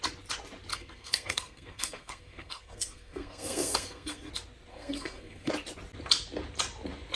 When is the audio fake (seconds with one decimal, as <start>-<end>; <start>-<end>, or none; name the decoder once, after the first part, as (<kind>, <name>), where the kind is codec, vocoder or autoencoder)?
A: 0.7-4.3 (codec, SNAC); 4.7-5.5